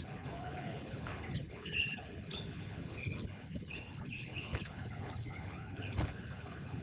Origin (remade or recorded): remade